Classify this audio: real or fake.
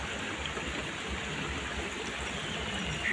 real